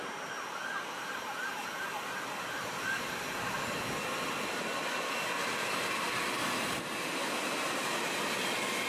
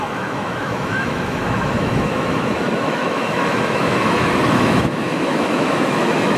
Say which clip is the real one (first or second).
first